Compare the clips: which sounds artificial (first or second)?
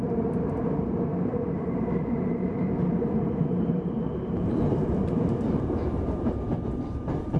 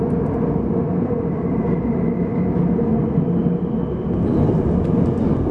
first